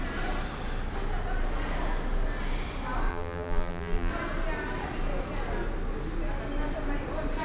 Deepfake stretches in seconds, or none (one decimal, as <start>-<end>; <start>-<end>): 3.1-4.1